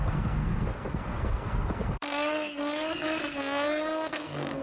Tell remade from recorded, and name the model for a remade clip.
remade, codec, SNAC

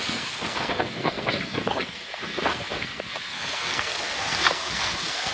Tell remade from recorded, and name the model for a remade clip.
remade, codec, SNAC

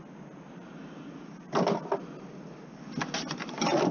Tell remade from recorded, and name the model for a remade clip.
recorded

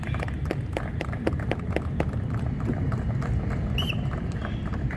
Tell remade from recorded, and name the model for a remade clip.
recorded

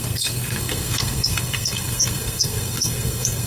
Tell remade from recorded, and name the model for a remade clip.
remade, codec, SNAC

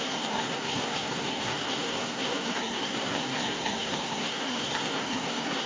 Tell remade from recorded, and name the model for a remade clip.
remade, codec, SNAC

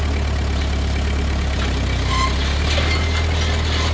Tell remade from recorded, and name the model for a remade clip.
recorded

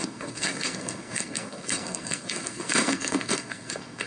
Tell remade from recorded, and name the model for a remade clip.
remade, codec, SNAC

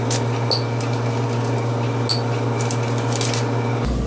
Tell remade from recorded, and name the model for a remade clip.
recorded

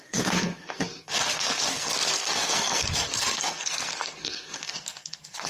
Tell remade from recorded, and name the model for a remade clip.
remade, codec, SNAC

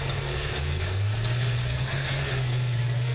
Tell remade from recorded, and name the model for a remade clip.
remade, codec, SNAC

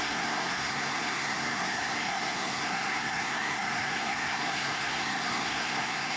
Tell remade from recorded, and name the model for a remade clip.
remade, codec, SNAC